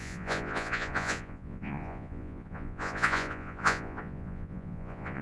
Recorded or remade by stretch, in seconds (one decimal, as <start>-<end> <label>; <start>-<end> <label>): 0.0-5.2 remade